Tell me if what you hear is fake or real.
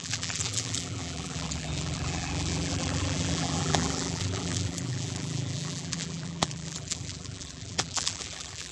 fake